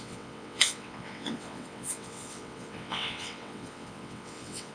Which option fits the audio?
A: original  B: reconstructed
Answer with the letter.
B